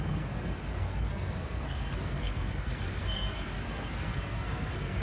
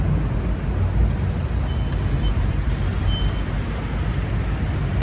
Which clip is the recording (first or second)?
second